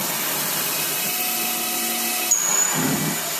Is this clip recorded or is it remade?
recorded